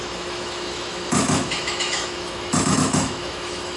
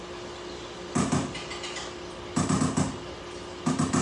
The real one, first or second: second